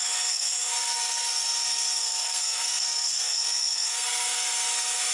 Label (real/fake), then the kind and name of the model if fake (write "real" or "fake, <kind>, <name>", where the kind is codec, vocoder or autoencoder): fake, codec, SNAC